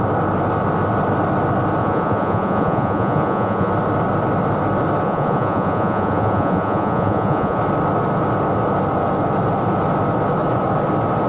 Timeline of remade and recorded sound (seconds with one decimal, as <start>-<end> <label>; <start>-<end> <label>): 0.0-1.8 recorded; 1.8-3.7 remade; 3.7-5.0 recorded; 5.0-7.6 remade; 7.6-11.3 recorded